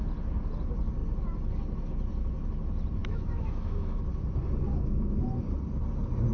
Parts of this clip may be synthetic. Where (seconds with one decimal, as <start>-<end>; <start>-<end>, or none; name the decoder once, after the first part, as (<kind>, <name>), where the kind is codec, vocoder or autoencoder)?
3.0-4.0 (autoencoder, DAC-VAE); 4.7-5.2